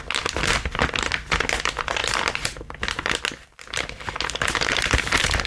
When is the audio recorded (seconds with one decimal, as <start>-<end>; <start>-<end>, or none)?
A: 0.0-5.5